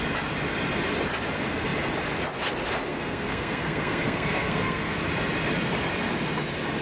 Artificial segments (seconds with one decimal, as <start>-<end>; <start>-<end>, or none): 2.9-5.0